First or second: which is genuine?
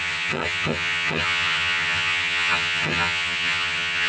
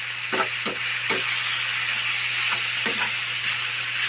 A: second